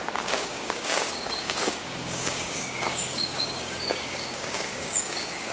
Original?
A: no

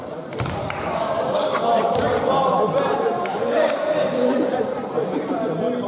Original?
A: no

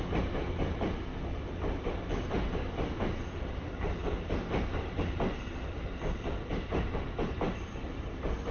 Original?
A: yes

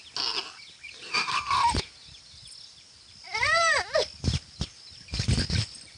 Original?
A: yes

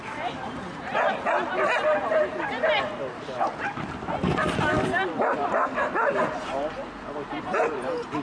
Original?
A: yes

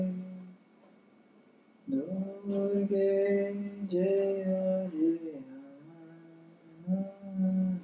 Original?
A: yes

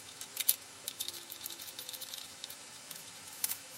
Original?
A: no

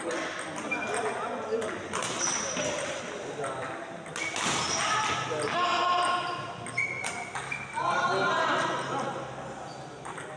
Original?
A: yes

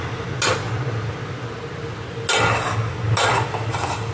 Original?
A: yes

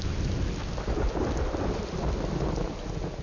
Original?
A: yes